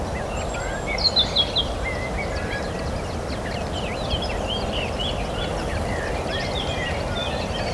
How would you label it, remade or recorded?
recorded